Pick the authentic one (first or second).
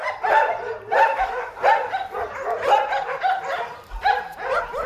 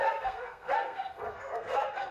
first